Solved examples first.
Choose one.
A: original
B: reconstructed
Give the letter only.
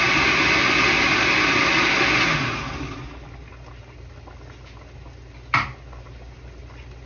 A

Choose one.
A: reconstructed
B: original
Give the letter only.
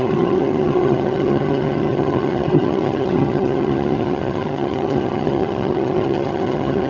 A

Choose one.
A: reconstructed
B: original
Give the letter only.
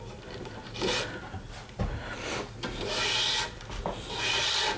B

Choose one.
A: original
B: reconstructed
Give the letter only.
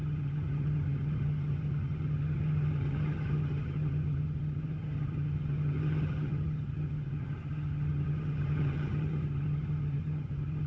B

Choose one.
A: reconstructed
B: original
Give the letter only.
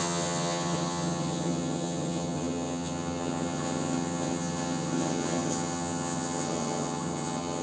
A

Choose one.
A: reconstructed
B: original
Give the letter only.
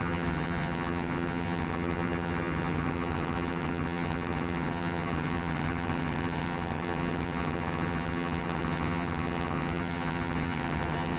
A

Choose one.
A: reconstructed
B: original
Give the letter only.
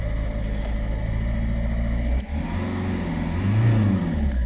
B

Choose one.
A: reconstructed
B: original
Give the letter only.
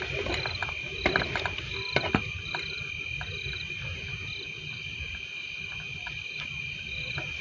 B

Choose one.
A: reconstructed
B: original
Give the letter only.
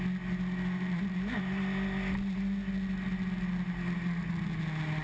B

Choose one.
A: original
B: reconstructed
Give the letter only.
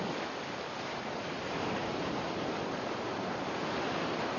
A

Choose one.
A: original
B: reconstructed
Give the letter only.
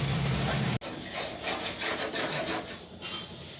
A